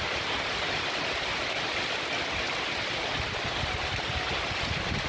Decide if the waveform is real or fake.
real